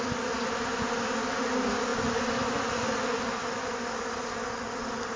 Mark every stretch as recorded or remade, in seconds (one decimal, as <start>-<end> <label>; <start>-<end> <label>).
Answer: 0.0-5.2 recorded